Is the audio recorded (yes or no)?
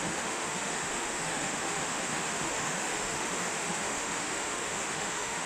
no